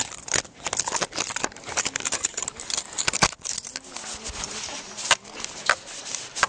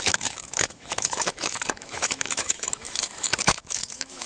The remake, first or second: second